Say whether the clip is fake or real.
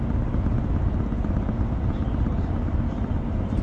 real